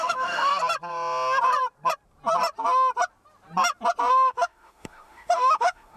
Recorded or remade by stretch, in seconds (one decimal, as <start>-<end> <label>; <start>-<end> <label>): 0.0-0.5 remade; 0.5-4.1 recorded; 4.1-6.0 remade